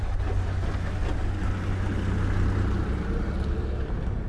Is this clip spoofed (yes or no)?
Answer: no